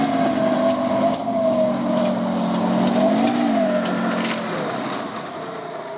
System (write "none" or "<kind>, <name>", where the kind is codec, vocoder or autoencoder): none